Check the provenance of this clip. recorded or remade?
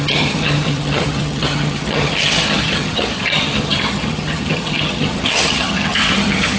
remade